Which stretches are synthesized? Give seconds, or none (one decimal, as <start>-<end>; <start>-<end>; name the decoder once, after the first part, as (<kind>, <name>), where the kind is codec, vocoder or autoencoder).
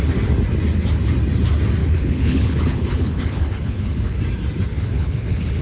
1.8-4.2 (codec, HILCodec); 4.7-5.6